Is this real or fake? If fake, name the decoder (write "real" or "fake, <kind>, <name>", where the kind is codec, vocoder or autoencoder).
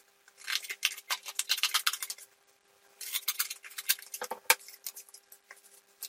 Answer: real